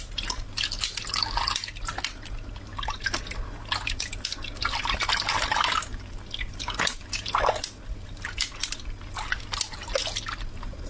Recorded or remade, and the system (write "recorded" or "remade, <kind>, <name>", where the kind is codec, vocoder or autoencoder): recorded